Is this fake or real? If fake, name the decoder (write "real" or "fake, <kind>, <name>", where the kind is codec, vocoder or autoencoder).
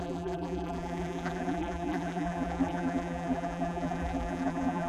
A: fake, vocoder, BigVGAN v2